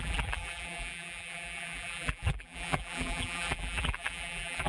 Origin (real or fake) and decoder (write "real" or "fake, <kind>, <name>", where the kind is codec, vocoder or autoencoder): fake, vocoder, BigVGAN v2